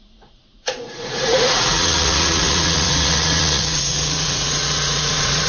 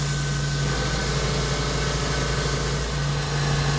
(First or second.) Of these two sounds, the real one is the second